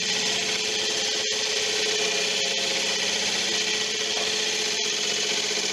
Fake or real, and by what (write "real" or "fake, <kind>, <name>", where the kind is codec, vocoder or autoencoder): real